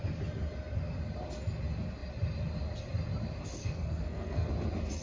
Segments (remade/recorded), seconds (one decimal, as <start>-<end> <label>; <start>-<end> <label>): 0.0-3.6 recorded; 3.6-4.5 remade; 4.5-5.0 recorded